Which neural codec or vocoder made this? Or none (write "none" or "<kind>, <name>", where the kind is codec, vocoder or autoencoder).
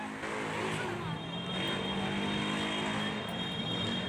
none